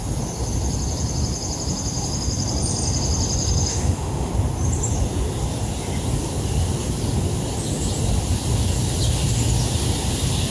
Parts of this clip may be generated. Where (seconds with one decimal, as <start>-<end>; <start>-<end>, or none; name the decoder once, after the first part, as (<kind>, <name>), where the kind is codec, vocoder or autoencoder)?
3.7-4.3 (autoencoder, DAC-VAE)